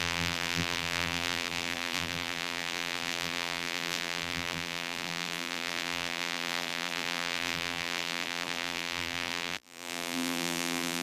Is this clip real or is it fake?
fake